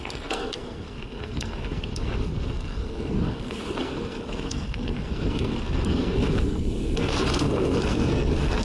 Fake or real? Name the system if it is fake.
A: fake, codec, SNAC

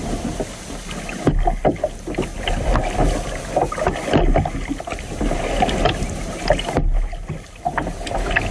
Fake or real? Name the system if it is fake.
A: real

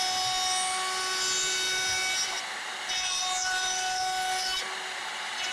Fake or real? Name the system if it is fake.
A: real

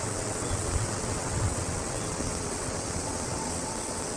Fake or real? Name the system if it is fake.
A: fake, vocoder, WaveNeXt